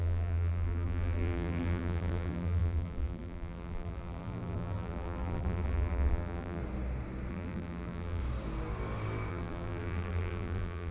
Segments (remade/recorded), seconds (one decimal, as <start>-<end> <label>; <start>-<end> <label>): 0.0-6.6 remade; 6.6-7.3 recorded; 7.3-8.2 remade; 8.2-9.3 recorded; 9.3-10.9 remade